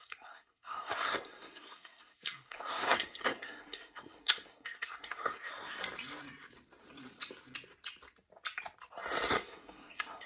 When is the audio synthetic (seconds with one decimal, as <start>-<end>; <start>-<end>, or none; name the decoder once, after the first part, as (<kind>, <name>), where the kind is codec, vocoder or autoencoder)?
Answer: 0.0-5.8 (codec, SNAC); 9.3-10.3